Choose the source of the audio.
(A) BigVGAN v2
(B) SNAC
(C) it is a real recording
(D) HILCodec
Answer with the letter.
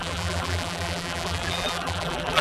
A